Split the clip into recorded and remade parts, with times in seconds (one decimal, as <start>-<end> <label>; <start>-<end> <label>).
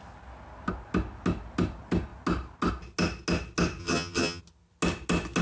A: 0.0-3.8 recorded; 3.8-4.4 remade; 4.4-5.4 recorded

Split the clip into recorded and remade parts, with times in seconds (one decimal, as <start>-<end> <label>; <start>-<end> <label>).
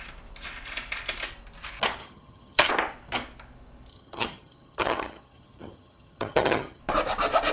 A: 0.0-2.0 recorded; 2.0-2.7 remade; 2.7-3.9 recorded; 3.9-6.8 remade; 6.8-7.5 recorded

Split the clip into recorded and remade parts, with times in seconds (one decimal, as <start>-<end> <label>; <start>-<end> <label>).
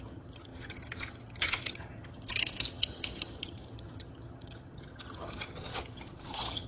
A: 0.0-6.7 remade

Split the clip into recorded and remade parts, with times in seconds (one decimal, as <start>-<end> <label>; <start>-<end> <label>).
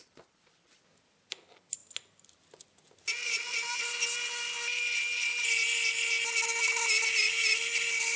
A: 0.0-8.2 recorded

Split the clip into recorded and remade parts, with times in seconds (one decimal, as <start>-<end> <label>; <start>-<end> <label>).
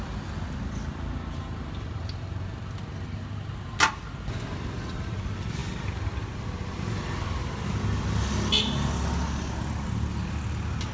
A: 0.0-10.9 recorded